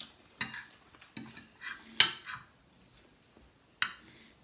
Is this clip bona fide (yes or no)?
yes